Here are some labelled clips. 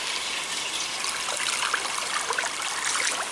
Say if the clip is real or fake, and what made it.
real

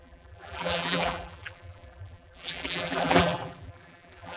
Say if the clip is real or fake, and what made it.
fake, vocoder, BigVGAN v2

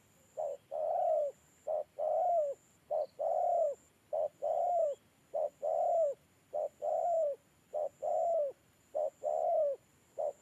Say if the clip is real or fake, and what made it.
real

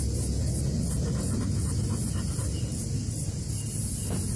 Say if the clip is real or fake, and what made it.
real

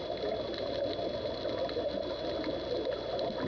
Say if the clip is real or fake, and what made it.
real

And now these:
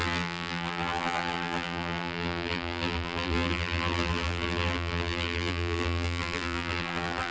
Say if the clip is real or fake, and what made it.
fake, vocoder, BigVGAN v2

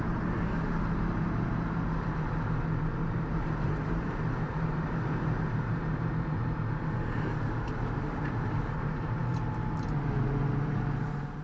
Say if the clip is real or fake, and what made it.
fake, vocoder, BigVGAN v2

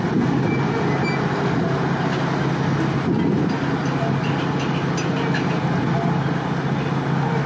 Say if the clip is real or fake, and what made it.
real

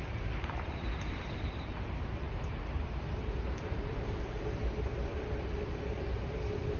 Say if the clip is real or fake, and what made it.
fake, vocoder, BigVGAN v2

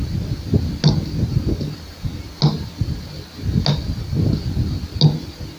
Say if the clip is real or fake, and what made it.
real